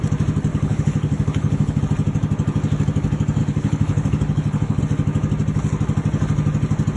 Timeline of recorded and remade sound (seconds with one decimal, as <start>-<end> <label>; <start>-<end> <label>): 0.0-0.5 recorded; 0.5-1.8 remade; 1.8-3.4 recorded; 3.4-4.8 remade; 4.8-7.0 recorded

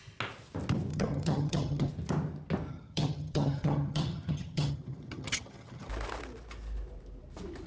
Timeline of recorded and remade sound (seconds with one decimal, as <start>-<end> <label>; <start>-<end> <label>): 0.0-0.9 recorded; 0.9-1.9 remade; 1.9-2.7 recorded; 2.7-5.9 remade; 5.9-7.7 recorded